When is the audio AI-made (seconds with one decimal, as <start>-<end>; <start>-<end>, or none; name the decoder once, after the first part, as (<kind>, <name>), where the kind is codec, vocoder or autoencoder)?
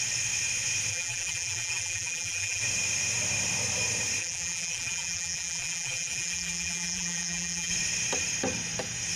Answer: 0.9-2.6 (vocoder, BigVGAN v2); 4.2-7.7